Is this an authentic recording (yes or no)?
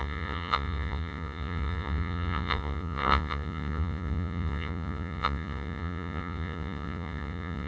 no